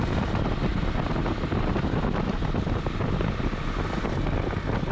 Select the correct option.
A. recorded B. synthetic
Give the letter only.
A